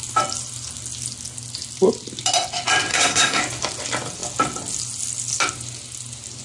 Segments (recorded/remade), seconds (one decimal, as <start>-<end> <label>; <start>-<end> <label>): 0.0-2.9 recorded; 2.9-3.4 remade; 3.4-6.4 recorded